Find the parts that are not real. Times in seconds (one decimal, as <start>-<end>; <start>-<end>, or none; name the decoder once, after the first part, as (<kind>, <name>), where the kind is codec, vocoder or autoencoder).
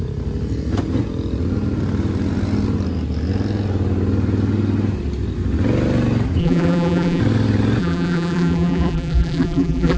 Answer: 6.4-7.2 (vocoder, BigVGAN v2); 7.8-10.0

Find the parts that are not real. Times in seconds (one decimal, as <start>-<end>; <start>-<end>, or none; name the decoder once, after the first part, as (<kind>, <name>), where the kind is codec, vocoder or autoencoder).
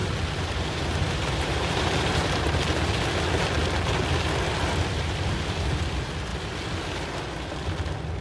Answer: 0.0-3.1 (vocoder, BigVGAN v2)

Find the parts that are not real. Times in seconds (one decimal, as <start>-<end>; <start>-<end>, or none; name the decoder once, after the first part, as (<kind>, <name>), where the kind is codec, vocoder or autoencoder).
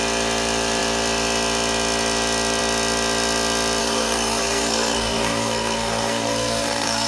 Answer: 3.8-7.1 (codec, SNAC)